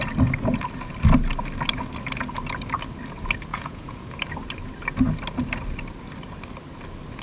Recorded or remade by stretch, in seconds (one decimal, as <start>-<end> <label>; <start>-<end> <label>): 0.0-3.5 recorded; 3.5-4.2 remade; 4.2-7.2 recorded